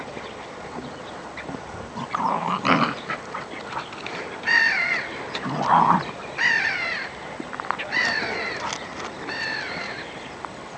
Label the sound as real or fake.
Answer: real